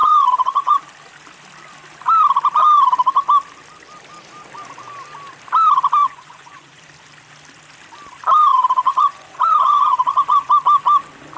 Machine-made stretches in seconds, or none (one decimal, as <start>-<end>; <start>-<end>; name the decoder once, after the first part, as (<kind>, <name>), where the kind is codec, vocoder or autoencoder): 0.0-0.8 (vocoder, Vocos); 6.0-6.8; 8.5-10.5